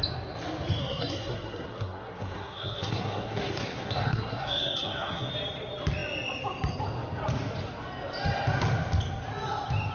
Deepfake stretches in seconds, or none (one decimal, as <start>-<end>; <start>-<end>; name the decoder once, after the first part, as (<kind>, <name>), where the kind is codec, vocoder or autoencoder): 0.8-5.3 (codec, SNAC)